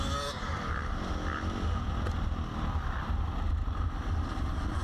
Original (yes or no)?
yes